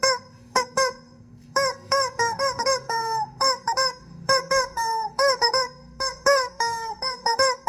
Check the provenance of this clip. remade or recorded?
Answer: remade